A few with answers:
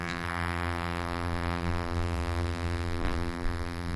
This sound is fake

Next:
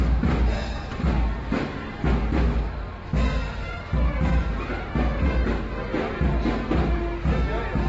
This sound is real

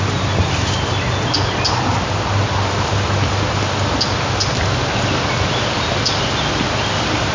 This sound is real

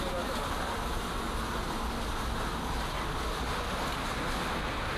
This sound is real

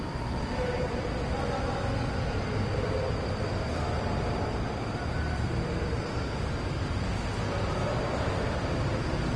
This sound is real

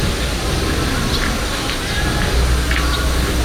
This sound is real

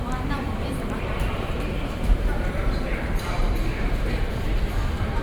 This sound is fake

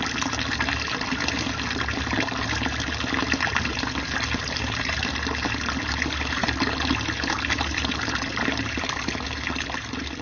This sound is real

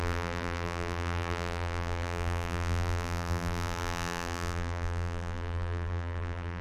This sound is fake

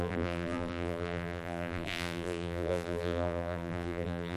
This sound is fake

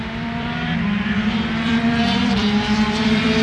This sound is fake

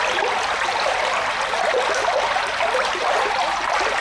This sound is real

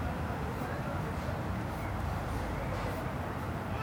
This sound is fake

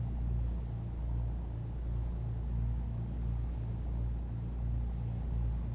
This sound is real